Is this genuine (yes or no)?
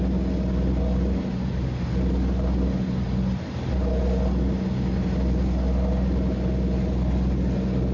yes